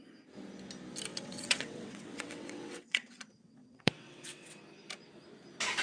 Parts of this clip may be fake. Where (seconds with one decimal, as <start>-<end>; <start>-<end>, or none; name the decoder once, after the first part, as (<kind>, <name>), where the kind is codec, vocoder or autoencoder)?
1.1-4.6 (vocoder, WaveNeXt)